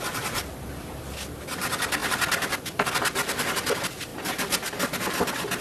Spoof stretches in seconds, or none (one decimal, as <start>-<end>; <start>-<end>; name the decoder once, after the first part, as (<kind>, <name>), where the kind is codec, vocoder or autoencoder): none